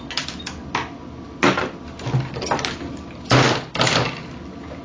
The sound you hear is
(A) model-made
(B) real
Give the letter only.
B